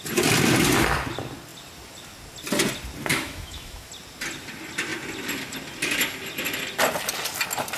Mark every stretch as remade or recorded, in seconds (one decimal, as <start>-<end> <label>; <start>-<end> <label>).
0.0-3.1 recorded; 3.1-3.9 remade; 3.9-7.8 recorded